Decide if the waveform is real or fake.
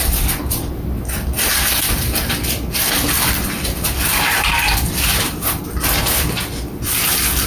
real